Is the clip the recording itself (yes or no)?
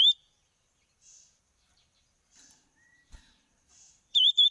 no